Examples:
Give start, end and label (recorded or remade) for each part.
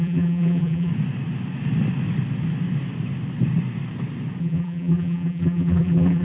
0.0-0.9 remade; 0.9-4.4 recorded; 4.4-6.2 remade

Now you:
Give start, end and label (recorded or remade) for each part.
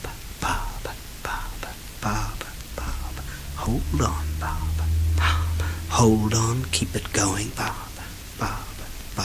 0.0-9.2 recorded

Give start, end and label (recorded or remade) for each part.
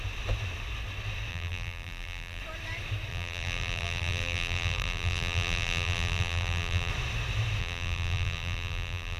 0.0-1.3 recorded; 1.3-2.4 remade; 2.4-3.1 recorded; 3.1-6.9 remade; 6.9-7.6 recorded; 7.6-9.2 remade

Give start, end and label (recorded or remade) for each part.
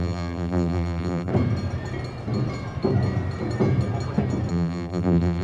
0.0-1.3 remade; 1.3-4.5 recorded; 4.5-5.4 remade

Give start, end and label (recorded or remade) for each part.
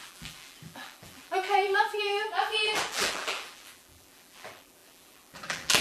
0.0-5.8 remade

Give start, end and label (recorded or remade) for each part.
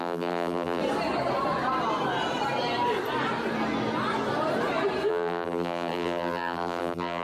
0.0-0.8 remade; 0.8-5.1 recorded; 5.1-7.2 remade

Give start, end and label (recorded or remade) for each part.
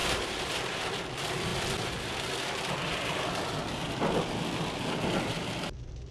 0.0-0.8 remade; 0.8-6.1 recorded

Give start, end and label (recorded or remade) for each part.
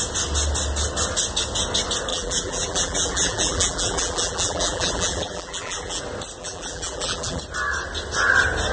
0.0-2.1 recorded; 2.1-6.0 remade; 6.0-6.4 recorded; 6.4-7.4 remade; 7.4-8.7 recorded